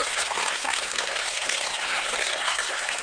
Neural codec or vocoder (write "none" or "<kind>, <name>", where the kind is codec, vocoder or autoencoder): codec, SNAC